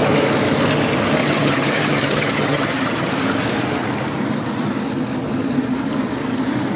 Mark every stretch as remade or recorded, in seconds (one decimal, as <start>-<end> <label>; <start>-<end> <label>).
0.0-1.2 recorded; 1.2-3.1 remade; 3.1-6.8 recorded